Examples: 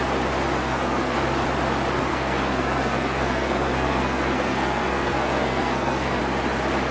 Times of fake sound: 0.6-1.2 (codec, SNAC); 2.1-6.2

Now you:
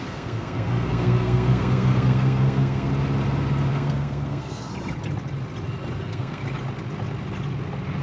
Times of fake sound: 0.0-2.9 (codec, SNAC); 3.7-4.7; 6.0-6.4

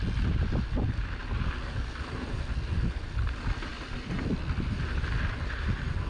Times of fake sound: none

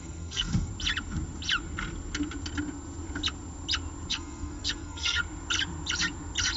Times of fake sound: 0.0-0.7 (codec, SNAC); 4.1-5.2

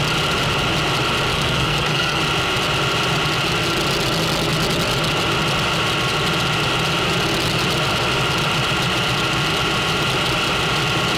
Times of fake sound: 1.3-2.2 (codec, SNAC)

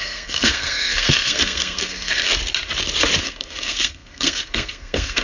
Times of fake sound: 0.0-2.3 (codec, SNAC); 3.2-5.2